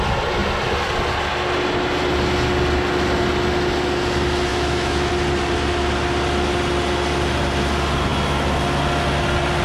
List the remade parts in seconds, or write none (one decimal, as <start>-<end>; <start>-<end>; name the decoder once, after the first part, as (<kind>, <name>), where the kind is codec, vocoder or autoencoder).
4.5-5.1 (autoencoder, DAC-VAE)